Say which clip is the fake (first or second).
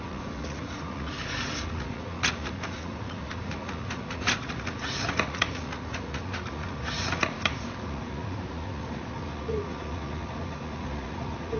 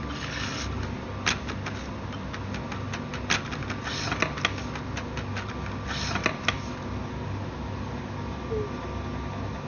first